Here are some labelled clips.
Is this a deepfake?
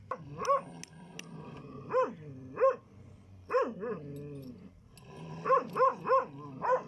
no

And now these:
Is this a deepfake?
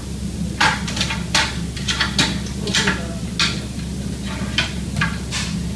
no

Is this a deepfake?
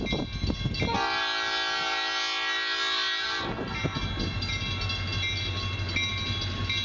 no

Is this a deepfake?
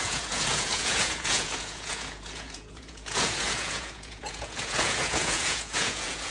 yes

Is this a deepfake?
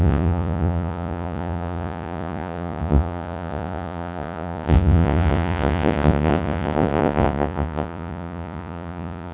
yes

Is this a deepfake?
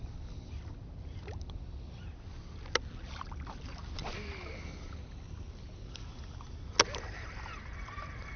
no